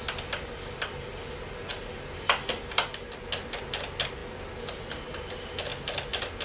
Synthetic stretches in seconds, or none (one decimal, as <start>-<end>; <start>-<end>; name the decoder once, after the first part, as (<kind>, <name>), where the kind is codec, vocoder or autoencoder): none